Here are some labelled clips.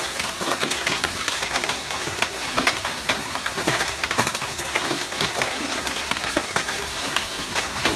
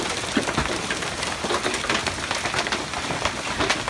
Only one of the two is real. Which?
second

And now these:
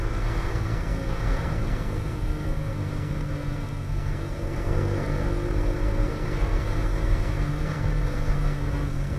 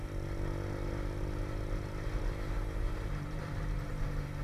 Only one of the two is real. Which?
second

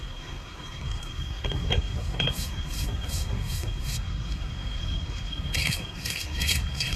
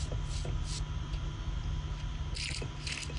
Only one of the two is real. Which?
second